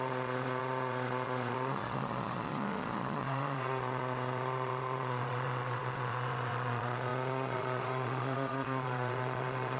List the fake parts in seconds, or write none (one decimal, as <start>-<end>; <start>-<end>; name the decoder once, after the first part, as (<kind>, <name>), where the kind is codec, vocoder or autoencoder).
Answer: 0.0-9.8 (vocoder, Vocos)